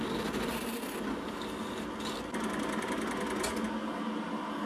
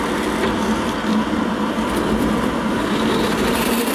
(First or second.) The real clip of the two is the first